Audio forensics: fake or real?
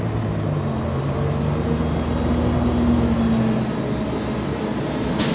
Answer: real